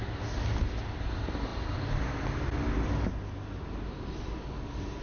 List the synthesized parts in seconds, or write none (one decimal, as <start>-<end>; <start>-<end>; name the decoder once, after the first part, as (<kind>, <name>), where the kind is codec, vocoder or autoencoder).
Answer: none